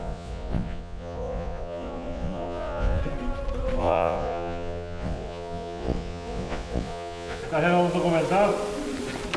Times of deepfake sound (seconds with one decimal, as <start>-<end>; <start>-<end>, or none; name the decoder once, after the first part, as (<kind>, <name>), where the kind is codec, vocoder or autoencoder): 0.0-3.0 (vocoder, Vocos); 3.8-7.4